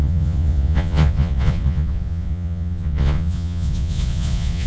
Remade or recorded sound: remade